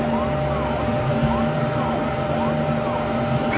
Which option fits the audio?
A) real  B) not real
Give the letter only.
A